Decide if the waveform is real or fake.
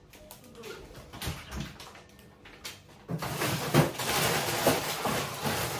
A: real